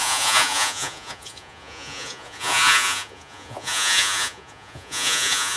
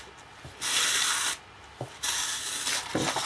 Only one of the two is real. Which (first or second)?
second